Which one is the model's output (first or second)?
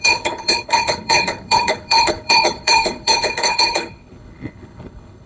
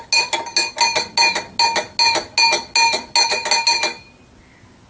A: first